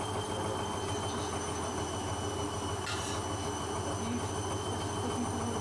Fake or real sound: real